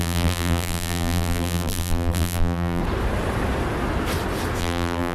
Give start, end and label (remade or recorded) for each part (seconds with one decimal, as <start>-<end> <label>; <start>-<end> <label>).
0.0-2.8 remade; 2.8-4.6 recorded; 4.6-5.1 remade